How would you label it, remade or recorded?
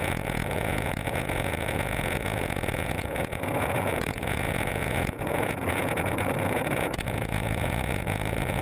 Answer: remade